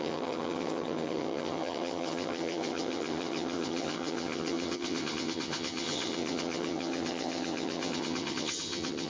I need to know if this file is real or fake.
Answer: fake